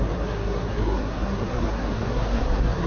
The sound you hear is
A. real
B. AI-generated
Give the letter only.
B